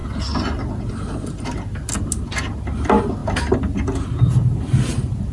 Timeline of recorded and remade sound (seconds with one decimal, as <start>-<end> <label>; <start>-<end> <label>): 0.0-5.3 recorded